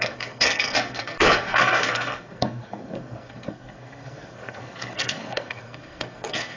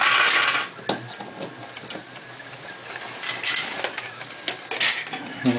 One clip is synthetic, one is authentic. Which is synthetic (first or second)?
first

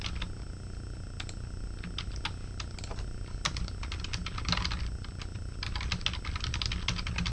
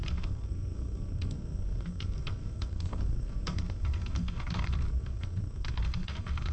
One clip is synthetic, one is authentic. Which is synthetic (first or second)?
second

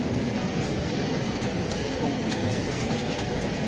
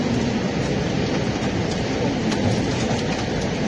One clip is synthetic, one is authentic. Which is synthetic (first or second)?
first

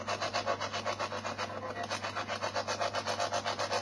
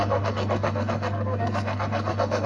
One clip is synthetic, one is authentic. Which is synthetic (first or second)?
second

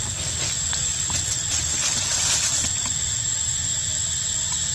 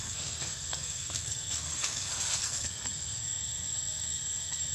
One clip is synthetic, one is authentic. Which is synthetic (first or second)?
second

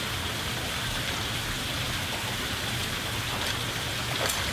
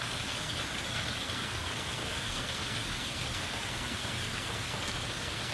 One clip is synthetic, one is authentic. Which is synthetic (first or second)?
second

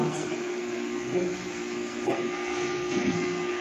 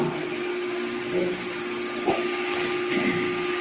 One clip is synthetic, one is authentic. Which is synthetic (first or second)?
first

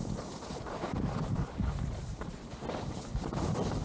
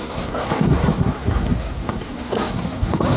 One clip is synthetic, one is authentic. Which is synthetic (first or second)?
second